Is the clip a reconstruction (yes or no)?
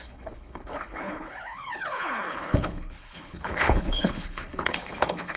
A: yes